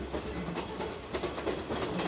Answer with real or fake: real